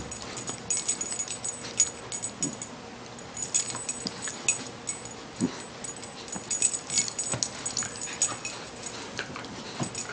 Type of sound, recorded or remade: recorded